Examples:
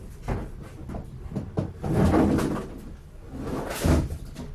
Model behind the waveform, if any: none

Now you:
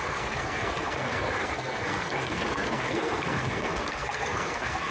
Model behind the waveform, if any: codec, SNAC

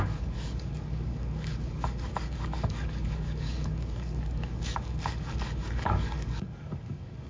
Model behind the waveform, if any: codec, DAC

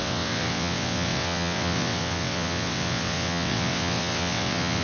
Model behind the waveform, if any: vocoder, WaveNeXt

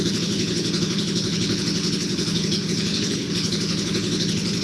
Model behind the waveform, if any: codec, HILCodec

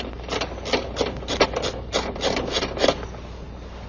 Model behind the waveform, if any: none